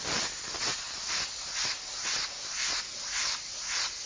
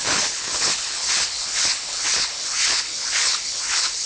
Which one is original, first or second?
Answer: first